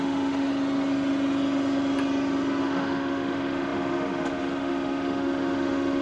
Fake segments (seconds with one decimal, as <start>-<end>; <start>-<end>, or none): 0.0-0.5; 2.6-6.0

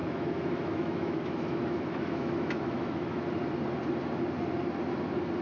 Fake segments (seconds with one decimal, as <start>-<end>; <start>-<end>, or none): 0.0-3.2

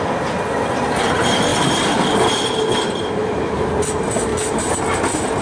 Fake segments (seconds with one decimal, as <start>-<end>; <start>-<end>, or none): 3.2-3.7

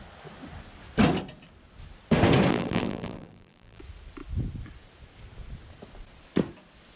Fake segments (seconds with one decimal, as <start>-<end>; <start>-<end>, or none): 2.5-3.8

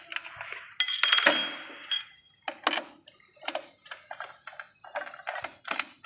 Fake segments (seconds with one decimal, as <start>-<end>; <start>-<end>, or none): none